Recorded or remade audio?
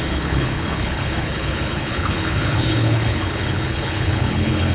remade